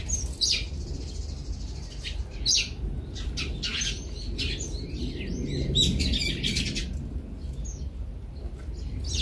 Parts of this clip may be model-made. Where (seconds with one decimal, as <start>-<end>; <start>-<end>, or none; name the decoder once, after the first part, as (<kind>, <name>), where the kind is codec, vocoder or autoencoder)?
none

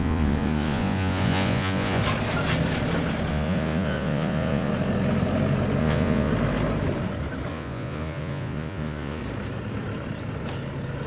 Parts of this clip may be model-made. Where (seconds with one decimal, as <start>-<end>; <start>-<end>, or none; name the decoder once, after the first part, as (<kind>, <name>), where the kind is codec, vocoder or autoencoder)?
0.0-2.0 (vocoder, Vocos); 3.3-4.7; 5.8-6.3; 7.5-9.2

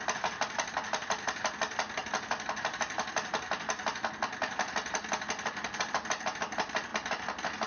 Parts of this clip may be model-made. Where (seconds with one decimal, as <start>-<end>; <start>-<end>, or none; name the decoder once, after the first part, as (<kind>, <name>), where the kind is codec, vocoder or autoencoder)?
2.0-3.3 (vocoder, BigVGAN v2)

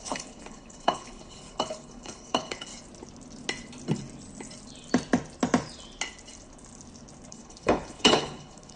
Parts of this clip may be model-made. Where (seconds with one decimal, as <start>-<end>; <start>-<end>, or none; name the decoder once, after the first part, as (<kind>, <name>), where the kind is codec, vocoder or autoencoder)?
0.0-2.7 (codec, HILCodec); 7.3-8.8

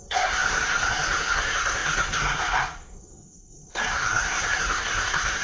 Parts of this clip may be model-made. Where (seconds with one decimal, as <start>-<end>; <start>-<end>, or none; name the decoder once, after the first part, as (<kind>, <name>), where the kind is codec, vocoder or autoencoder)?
0.0-5.4 (codec, SNAC)

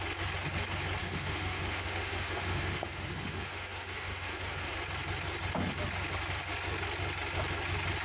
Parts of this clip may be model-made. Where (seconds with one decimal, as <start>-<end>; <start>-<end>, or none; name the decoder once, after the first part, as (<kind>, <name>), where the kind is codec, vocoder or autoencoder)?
1.0-4.7 (autoencoder, DAC-VAE)

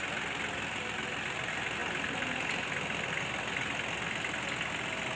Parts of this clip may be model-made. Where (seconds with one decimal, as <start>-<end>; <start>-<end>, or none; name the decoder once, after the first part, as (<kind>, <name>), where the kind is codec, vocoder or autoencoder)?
none

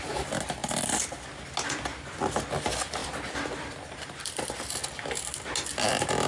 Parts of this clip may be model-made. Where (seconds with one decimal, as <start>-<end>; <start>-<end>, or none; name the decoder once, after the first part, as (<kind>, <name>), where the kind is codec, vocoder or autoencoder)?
0.6-1.4 (vocoder, BigVGAN v2); 3.0-4.7